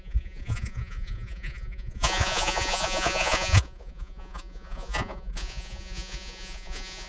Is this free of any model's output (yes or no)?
no